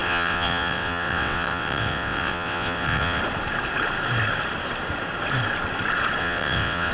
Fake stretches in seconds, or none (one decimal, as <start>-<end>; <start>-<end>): 0.0-3.2; 6.2-6.9